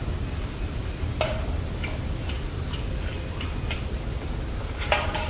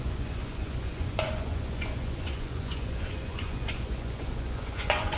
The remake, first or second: second